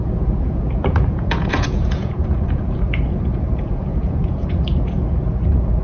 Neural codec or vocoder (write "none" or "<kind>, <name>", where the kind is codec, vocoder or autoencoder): vocoder, Vocos